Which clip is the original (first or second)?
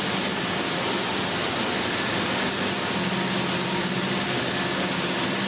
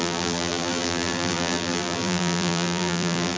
first